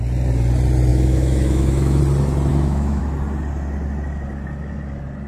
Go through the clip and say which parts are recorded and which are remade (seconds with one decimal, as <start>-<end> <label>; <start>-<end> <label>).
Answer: 0.0-0.9 recorded; 0.9-2.0 remade; 2.0-2.5 recorded; 2.5-3.0 remade; 3.0-5.3 recorded